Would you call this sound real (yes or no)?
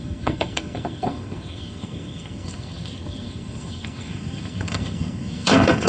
no